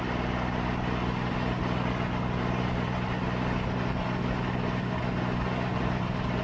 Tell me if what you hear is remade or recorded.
recorded